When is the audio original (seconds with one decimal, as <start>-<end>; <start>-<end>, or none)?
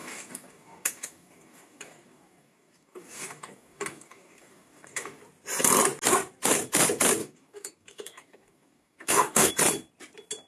5.2-7.2; 9.5-10.5